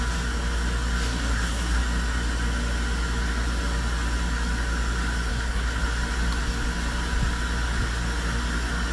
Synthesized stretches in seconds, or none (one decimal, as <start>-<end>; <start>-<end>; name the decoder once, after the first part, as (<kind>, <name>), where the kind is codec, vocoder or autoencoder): 1.1-1.8 (codec, SNAC); 5.3-5.8